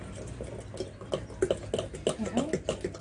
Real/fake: real